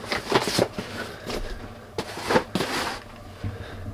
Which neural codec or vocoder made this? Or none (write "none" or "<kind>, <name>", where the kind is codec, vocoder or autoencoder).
none